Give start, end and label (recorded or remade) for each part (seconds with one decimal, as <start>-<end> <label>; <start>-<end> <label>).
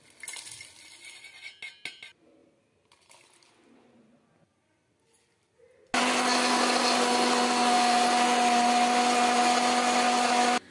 0.0-10.7 recorded